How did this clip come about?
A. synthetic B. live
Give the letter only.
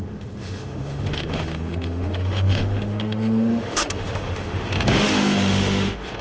A